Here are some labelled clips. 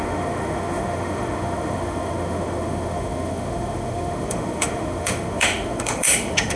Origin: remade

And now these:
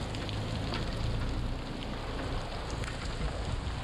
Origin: recorded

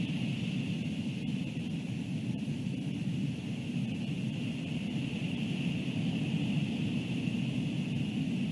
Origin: recorded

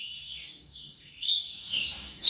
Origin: remade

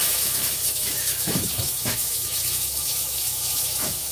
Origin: remade